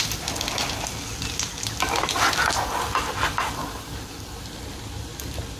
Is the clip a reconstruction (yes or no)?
no